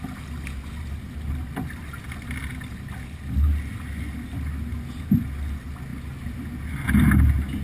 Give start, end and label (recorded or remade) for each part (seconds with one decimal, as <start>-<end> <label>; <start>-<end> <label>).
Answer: 0.0-7.6 recorded